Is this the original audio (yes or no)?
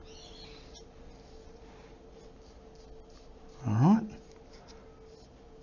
yes